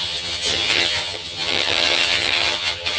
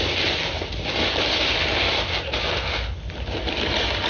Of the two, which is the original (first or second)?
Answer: second